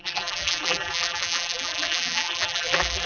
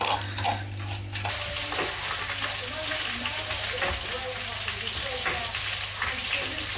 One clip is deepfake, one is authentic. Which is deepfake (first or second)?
first